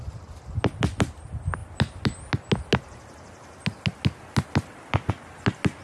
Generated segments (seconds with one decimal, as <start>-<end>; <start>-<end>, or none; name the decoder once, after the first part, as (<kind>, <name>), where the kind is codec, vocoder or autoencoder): none